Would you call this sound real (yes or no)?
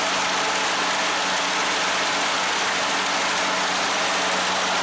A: yes